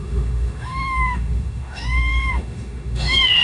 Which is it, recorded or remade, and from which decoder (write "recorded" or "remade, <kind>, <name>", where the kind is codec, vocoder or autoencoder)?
remade, autoencoder, DAC-VAE